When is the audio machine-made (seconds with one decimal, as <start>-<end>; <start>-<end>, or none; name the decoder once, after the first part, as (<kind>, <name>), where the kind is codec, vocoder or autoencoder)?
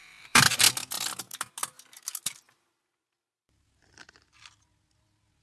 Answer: 0.0-0.6 (vocoder, BigVGAN v2)